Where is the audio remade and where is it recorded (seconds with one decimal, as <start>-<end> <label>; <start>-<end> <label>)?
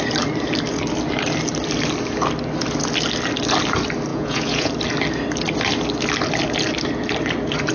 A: 0.0-4.1 recorded; 4.1-4.7 remade; 4.7-7.7 recorded